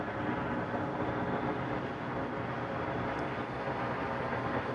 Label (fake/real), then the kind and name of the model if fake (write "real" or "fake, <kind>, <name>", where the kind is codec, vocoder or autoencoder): real